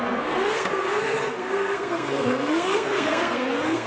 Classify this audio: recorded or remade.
remade